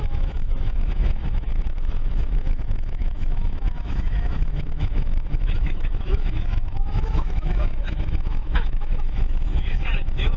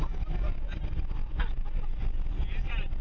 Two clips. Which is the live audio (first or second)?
second